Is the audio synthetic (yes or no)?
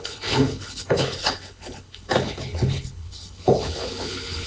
yes